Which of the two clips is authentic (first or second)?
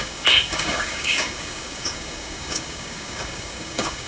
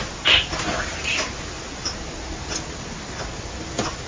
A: second